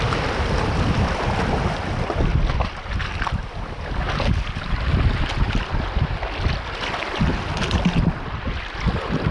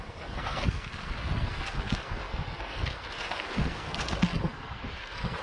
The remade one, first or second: second